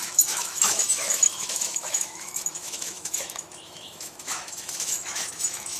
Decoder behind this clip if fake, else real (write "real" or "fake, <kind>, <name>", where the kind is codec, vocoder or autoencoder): fake, autoencoder, DAC-VAE